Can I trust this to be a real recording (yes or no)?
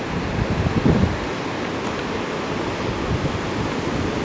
yes